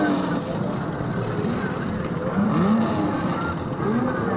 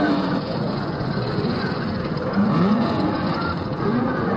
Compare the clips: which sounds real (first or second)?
first